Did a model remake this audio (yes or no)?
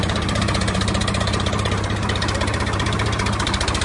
yes